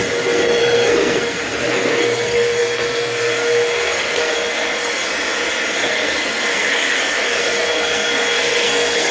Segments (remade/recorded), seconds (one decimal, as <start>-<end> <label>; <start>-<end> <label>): 0.0-5.0 remade; 5.0-5.7 recorded; 5.7-9.1 remade